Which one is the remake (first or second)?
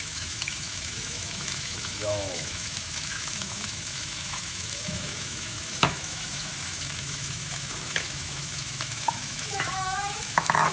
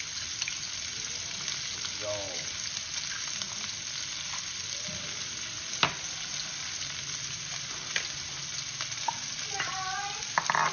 first